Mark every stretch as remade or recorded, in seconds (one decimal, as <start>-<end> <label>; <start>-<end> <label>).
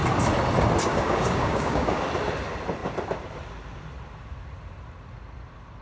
0.0-0.9 recorded; 0.9-2.0 remade; 2.0-5.8 recorded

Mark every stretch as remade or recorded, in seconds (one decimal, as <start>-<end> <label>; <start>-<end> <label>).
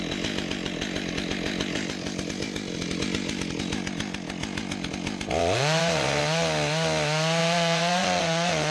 0.0-5.4 recorded; 5.4-6.2 remade; 6.2-7.4 recorded; 7.4-8.7 remade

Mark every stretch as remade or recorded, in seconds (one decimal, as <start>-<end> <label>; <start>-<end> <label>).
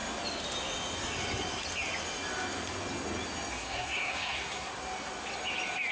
0.0-3.5 recorded; 3.5-4.7 remade; 4.7-5.9 recorded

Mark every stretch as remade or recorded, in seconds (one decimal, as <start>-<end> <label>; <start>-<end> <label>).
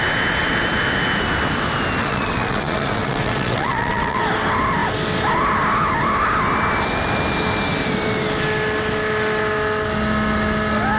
0.0-2.0 recorded; 2.0-4.2 remade; 4.2-11.0 recorded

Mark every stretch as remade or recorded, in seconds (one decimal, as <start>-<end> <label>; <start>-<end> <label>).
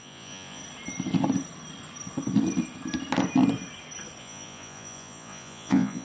0.0-0.6 remade; 0.6-4.2 recorded; 4.2-6.0 remade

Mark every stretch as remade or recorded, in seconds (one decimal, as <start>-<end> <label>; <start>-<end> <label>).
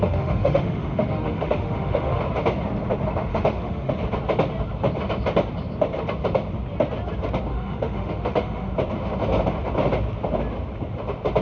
0.0-2.2 remade; 2.2-3.3 recorded; 3.3-3.9 remade; 3.9-7.5 recorded; 7.5-8.7 remade; 8.7-11.4 recorded